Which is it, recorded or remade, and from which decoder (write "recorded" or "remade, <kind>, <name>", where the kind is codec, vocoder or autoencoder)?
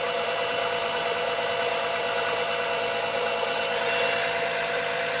recorded